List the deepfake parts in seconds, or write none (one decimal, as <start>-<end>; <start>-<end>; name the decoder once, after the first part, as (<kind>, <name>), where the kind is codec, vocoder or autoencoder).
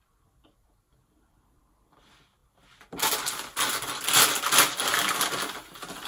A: none